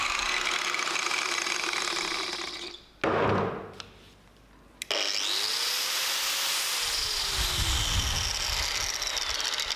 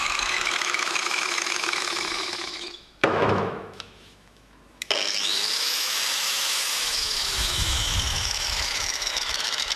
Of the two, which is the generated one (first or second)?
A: second